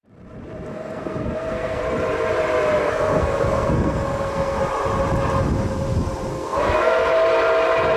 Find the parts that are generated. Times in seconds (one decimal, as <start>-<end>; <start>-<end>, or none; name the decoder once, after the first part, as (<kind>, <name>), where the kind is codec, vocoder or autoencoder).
0.7-1.8 (codec, SNAC); 2.8-4.6; 6.3-7.1